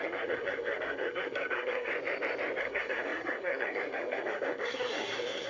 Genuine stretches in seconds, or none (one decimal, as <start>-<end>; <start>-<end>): 1.9-2.6